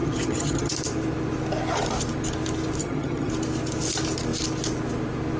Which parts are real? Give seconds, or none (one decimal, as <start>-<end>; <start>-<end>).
0.7-2.8; 3.3-5.4